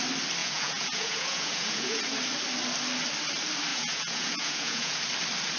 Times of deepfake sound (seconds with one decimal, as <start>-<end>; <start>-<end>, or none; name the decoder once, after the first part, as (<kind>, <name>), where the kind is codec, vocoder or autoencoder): 0.4-2.0 (vocoder, Vocos); 3.7-5.0